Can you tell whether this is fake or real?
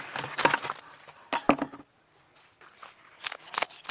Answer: real